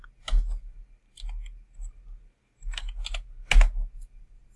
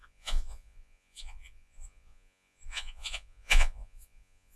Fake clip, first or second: second